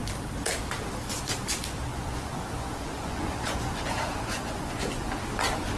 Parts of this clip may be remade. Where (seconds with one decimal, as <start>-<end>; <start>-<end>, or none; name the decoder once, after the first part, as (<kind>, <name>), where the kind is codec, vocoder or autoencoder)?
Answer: 1.9-5.1 (vocoder, Vocos)